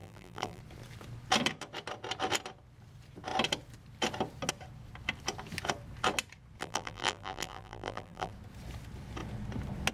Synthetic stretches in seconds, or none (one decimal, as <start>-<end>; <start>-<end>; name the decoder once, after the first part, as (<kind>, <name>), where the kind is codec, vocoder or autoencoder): 0.0-0.6 (vocoder, BigVGAN v2); 6.6-8.3